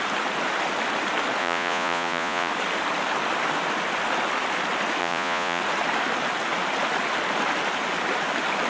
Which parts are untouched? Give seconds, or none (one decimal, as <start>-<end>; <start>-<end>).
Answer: 0.0-1.4; 2.5-5.0; 5.6-8.7